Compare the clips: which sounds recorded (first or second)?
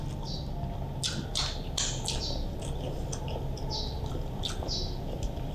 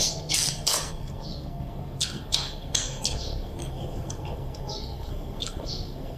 first